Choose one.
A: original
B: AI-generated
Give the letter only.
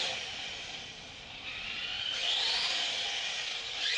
B